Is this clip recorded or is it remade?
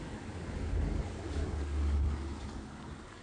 remade